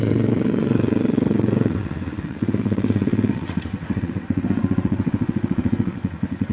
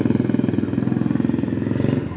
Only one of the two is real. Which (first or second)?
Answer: second